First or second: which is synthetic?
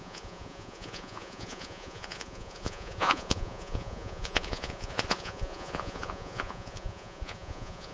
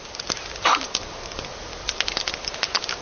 first